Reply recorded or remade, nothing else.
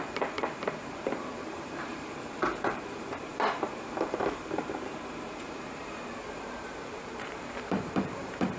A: remade